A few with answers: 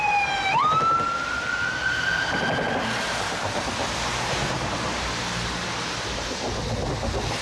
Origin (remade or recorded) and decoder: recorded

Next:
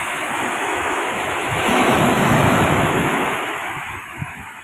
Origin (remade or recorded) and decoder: remade, autoencoder, DAC-VAE